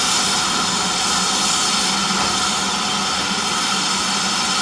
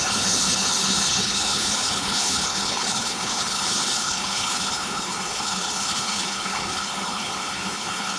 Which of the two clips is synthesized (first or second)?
second